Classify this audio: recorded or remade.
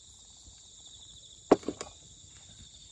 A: recorded